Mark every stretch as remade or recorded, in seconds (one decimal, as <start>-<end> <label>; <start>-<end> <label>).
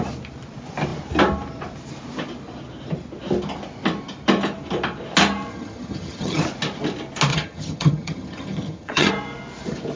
0.0-5.5 recorded; 5.5-6.4 remade; 6.4-7.3 recorded; 7.3-9.1 remade; 9.1-10.0 recorded